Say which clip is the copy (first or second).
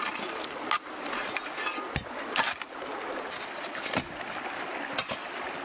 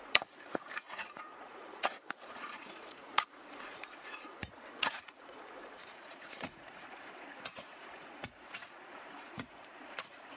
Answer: second